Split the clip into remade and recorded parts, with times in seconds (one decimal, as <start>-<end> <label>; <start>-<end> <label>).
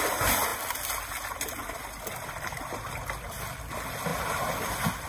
0.0-5.1 recorded